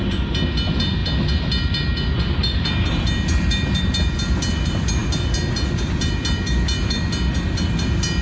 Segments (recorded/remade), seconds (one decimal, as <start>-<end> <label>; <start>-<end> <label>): 0.0-8.2 recorded